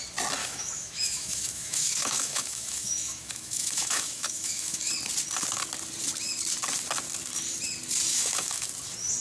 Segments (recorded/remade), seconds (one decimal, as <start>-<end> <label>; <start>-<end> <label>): 0.0-0.4 recorded; 0.4-4.9 remade; 4.9-8.1 recorded; 8.1-8.7 remade; 8.7-9.2 recorded